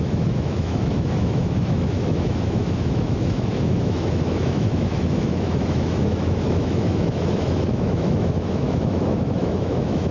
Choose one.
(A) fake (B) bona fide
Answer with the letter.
A